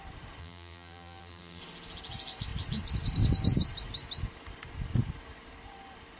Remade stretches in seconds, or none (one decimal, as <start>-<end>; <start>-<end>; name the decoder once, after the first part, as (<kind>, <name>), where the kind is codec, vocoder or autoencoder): 0.4-1.6 (vocoder, BigVGAN v2)